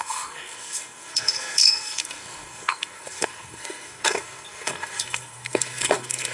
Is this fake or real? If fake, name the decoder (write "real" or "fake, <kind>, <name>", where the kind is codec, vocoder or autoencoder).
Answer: fake, codec, SNAC